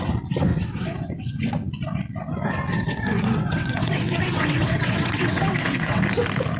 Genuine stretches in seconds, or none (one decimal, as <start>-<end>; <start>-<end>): 0.0-0.5; 1.4-2.7; 6.0-6.6